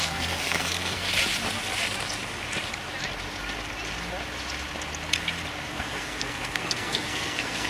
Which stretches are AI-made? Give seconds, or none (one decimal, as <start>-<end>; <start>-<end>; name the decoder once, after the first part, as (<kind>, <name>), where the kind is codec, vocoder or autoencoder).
0.0-1.1 (codec, SNAC); 5.7-7.7